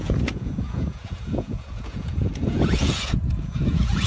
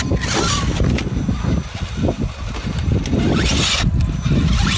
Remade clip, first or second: first